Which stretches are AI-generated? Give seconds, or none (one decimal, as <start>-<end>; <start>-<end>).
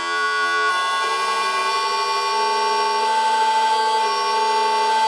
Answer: 0.0-0.7